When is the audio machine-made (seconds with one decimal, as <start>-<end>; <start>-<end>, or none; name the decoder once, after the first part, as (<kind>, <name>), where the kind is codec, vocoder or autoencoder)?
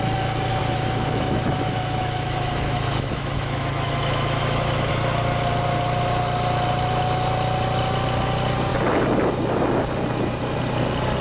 0.6-4.9 (autoencoder, DAC-VAE)